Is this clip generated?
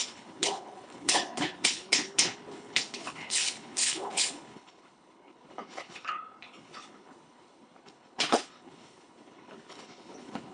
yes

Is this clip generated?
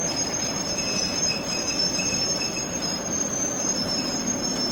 yes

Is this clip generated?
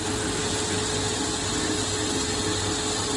no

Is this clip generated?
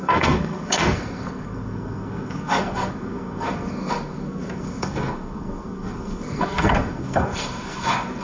yes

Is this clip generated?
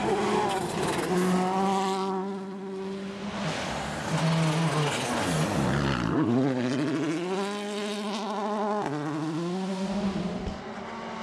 no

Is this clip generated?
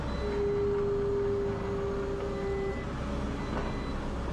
no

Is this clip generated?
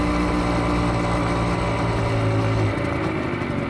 no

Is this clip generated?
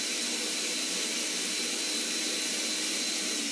no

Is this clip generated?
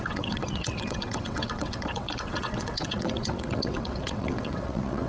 yes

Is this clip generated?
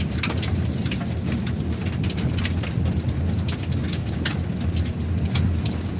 no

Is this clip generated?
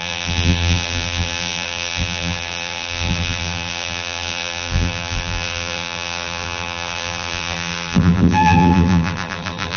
yes